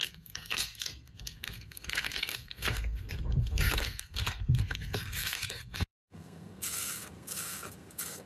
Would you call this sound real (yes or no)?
no